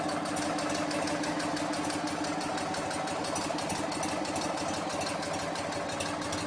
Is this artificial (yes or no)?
no